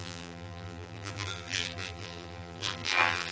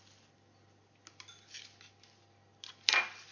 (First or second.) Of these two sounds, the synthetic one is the first